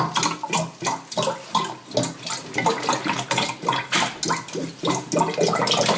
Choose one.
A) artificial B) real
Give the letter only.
B